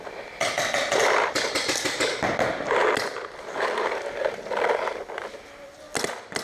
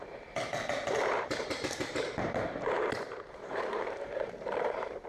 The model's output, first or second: second